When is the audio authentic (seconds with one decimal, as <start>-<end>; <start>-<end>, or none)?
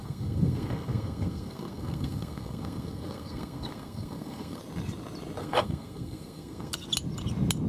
4.6-5.4; 6.7-7.7